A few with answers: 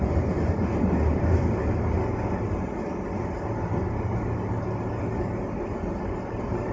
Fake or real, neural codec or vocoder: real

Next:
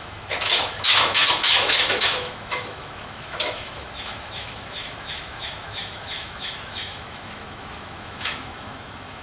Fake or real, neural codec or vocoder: fake, autoencoder, DAC-VAE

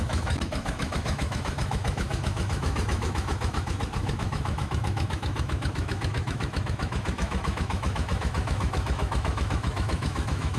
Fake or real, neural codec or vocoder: fake, autoencoder, DAC-VAE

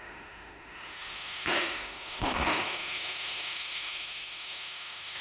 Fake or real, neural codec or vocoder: fake, autoencoder, DAC-VAE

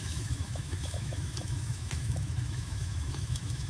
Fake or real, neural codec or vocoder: fake, autoencoder, DAC-VAE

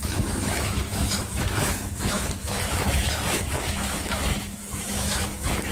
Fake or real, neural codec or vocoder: fake, autoencoder, DAC-VAE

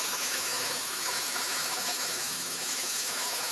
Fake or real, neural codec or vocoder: fake, autoencoder, DAC-VAE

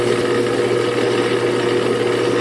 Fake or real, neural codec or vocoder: real